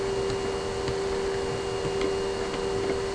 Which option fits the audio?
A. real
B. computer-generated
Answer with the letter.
A